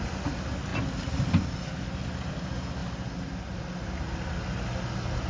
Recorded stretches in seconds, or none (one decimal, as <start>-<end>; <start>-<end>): 0.0-5.3